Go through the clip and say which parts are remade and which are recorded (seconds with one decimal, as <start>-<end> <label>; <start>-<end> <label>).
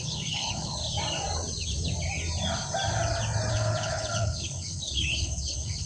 0.0-0.8 remade; 0.8-3.5 recorded; 3.5-5.9 remade